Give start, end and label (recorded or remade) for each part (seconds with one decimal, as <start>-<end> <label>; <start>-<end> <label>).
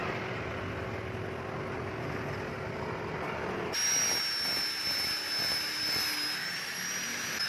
0.0-7.5 recorded